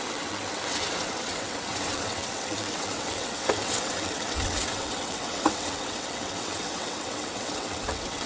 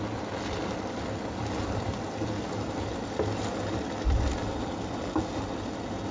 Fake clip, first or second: first